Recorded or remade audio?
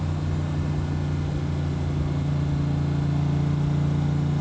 recorded